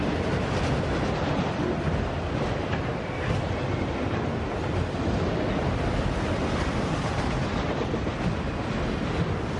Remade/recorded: recorded